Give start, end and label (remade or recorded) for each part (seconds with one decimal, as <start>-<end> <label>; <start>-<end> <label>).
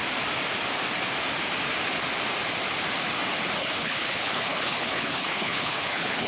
0.0-3.6 recorded; 3.6-6.3 remade